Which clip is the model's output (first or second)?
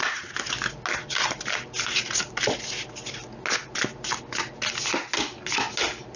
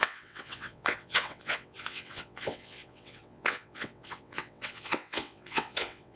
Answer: second